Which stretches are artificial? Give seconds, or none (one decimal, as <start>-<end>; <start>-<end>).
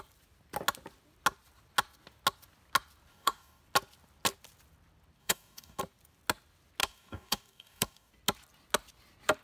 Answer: 3.1-3.6; 5.2-5.8; 6.8-8.1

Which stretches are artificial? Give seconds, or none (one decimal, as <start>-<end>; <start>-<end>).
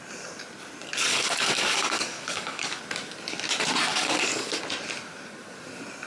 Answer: 1.1-2.8; 3.9-4.6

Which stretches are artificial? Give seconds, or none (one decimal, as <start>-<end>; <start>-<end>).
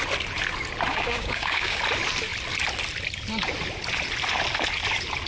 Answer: 0.9-1.8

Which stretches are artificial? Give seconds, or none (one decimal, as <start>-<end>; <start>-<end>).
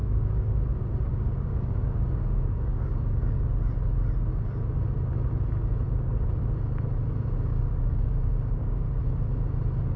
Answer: 0.0-0.5; 1.1-3.4; 7.5-9.0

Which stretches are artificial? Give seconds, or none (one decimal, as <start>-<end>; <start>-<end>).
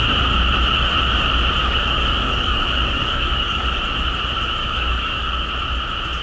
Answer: 1.6-3.8; 4.6-5.5